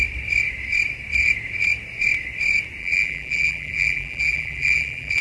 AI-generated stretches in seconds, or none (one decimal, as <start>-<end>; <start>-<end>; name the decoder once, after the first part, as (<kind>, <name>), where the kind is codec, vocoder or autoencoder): 2.8-5.2 (vocoder, BigVGAN v2)